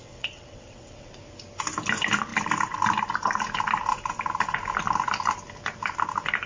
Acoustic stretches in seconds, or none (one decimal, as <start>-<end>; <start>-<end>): 1.2-6.5